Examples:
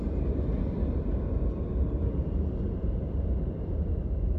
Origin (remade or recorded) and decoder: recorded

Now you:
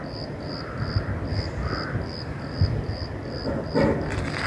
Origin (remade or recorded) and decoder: recorded